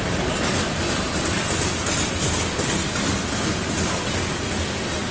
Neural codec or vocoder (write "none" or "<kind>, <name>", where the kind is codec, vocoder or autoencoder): none